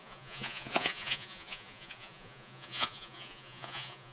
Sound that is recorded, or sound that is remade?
remade